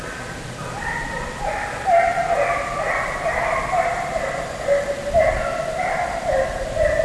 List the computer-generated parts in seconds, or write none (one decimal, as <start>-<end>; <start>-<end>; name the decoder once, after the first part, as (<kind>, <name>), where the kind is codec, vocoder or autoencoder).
none